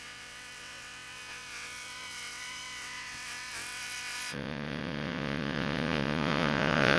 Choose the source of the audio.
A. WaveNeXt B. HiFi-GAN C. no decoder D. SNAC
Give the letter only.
A